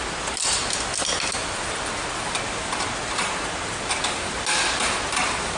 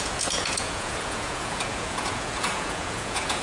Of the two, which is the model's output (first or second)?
second